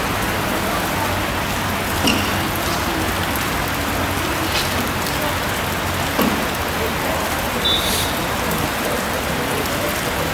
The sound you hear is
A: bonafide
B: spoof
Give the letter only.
A